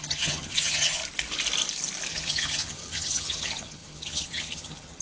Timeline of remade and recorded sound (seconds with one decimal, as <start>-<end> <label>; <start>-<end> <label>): 0.0-1.0 remade; 1.0-2.1 recorded; 2.1-5.0 remade